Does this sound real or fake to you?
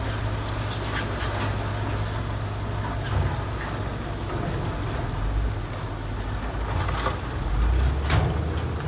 real